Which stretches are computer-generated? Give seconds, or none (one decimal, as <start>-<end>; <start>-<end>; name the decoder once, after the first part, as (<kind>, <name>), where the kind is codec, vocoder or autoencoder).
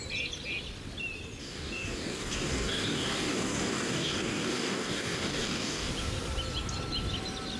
1.4-5.9 (codec, DAC)